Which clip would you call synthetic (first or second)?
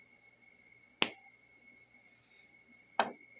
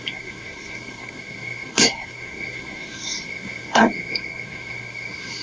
second